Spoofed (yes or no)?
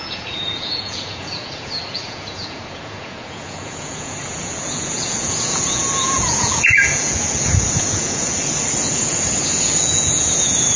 yes